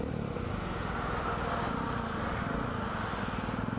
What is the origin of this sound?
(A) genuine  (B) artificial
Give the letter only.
A